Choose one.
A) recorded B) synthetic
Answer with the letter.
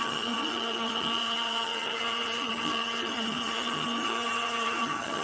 B